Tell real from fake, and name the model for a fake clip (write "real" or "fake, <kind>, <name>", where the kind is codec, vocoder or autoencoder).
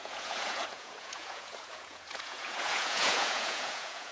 fake, vocoder, Vocos